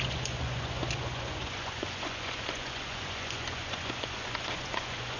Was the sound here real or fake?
fake